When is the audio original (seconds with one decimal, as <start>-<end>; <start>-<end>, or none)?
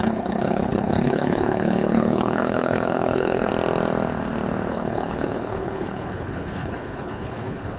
3.5-4.7